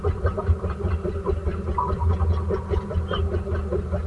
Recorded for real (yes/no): yes